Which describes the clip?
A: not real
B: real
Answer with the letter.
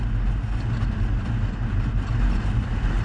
B